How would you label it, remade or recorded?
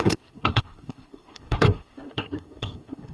remade